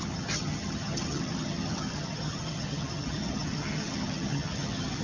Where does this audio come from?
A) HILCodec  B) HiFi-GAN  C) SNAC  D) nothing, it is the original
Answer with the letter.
B